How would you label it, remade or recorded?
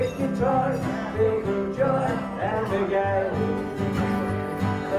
recorded